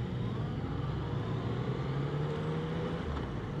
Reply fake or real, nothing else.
real